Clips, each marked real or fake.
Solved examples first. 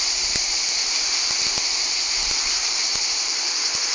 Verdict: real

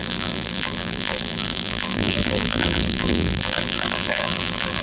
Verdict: fake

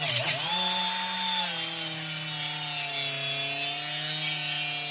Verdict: real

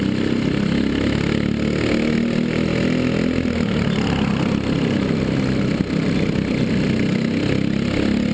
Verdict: real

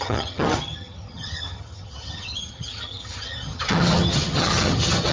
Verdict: fake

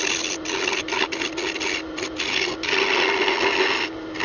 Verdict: real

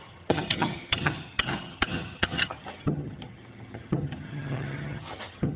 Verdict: fake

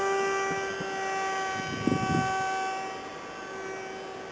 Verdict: real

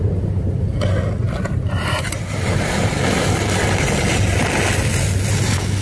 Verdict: real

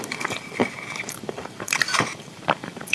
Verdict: fake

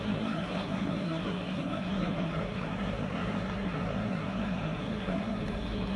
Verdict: fake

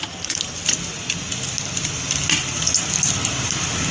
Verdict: real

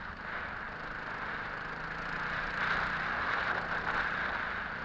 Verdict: real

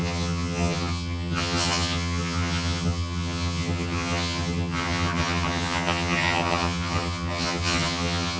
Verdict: fake